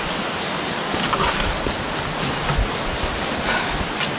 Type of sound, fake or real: real